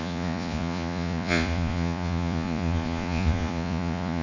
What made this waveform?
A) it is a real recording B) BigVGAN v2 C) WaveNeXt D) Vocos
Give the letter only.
D